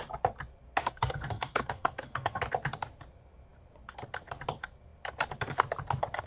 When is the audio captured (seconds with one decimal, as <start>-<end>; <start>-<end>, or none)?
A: 0.0-0.8; 2.4-6.3